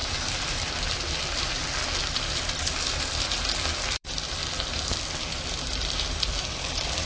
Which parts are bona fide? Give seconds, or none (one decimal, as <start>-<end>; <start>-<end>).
4.4-5.2